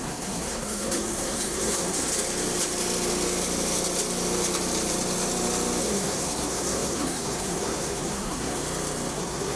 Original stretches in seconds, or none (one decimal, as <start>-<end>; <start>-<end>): 2.1-5.8; 8.6-9.1